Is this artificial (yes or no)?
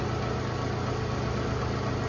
no